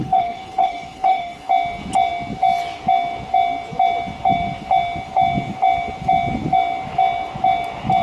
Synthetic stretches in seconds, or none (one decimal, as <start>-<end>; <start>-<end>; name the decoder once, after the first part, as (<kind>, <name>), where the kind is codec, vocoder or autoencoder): 0.0-1.5 (codec, HILCodec)